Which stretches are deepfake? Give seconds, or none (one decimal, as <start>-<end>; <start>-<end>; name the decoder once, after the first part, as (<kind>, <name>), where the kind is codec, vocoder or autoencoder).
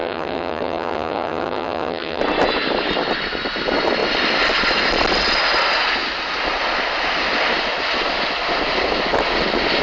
0.0-2.2 (vocoder, HiFi-GAN)